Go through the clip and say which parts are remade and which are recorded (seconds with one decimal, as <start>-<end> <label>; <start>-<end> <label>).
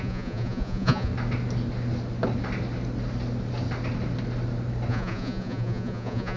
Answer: 0.0-1.1 remade; 1.1-4.9 recorded; 4.9-6.4 remade